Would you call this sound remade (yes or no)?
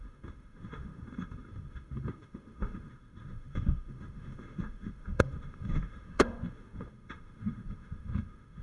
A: yes